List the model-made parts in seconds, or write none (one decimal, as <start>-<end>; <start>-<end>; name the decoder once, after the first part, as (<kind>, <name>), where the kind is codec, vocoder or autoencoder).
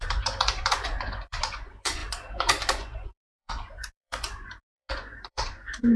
0.0-6.0 (vocoder, Vocos)